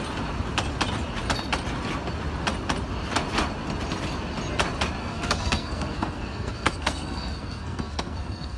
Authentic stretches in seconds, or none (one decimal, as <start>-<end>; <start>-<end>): 0.0-5.0